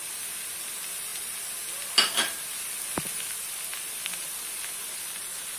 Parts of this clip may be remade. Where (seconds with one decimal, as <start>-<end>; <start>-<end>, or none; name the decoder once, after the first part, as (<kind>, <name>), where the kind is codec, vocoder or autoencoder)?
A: none